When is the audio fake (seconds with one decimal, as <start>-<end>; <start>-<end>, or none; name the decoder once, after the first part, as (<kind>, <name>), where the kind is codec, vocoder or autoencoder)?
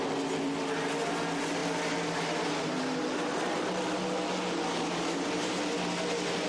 none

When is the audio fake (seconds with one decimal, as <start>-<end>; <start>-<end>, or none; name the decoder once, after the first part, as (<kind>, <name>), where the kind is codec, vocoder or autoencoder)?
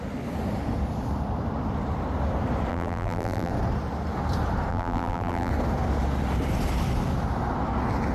2.7-3.5 (vocoder, BigVGAN v2); 4.7-5.5